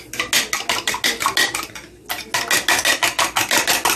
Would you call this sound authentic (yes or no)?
yes